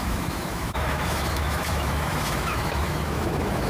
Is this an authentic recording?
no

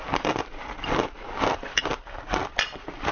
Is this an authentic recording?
yes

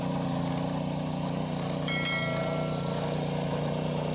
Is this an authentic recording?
yes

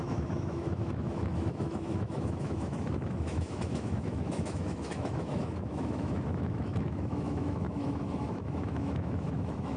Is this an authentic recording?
no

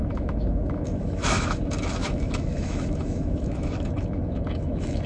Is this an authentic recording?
no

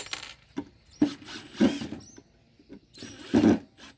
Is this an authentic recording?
yes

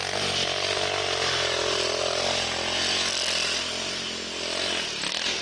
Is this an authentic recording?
yes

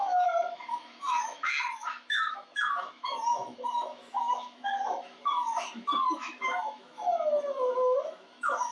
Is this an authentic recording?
no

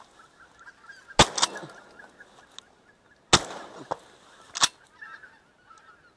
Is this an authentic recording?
yes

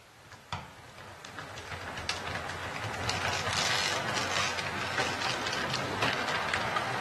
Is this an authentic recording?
yes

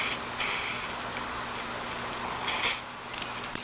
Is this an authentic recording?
yes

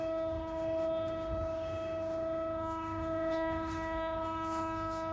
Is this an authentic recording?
no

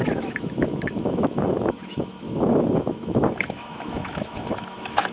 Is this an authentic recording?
no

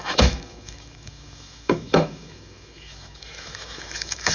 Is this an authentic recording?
no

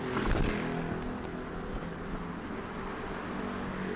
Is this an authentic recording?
yes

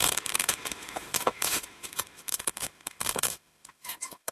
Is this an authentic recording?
no